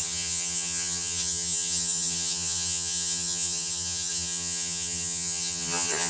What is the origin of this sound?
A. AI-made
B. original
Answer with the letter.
A